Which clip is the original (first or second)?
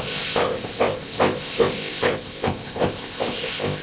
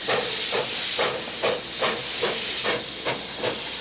second